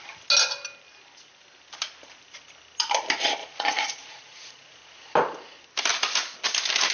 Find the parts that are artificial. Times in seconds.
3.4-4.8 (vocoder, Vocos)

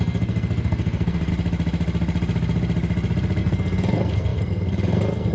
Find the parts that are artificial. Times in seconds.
0.0-1.3 (codec, SNAC); 3.4-5.3

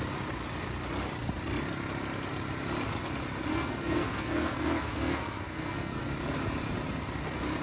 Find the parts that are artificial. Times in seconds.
3.5-6.0 (codec, SNAC)

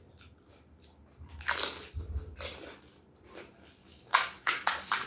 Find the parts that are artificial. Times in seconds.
3.8-5.1 (codec, DAC)

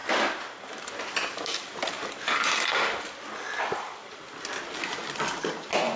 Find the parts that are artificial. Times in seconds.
none

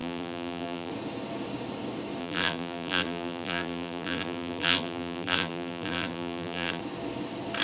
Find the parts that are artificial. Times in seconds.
0.0-0.9 (vocoder, BigVGAN v2); 2.2-6.8